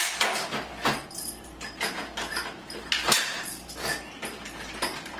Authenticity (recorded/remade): remade